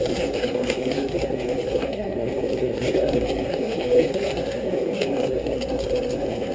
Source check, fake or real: fake